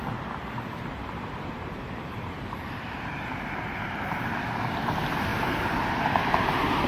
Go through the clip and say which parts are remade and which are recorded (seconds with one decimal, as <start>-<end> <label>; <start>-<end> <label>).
0.0-0.4 recorded; 0.4-4.3 remade; 4.3-5.3 recorded; 5.3-5.9 remade; 5.9-6.9 recorded